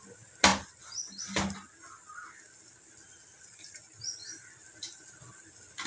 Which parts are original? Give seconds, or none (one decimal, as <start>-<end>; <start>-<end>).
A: 0.0-5.9